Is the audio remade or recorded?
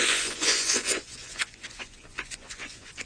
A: remade